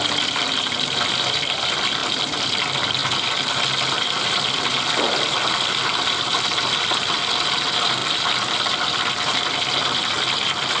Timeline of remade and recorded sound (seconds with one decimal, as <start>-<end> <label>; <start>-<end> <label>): 0.0-10.8 recorded